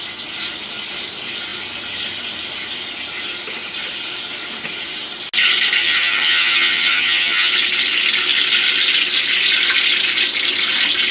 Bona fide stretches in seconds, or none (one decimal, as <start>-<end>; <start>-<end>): 0.0-5.8; 7.5-11.1